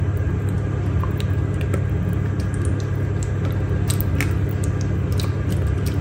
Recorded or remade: recorded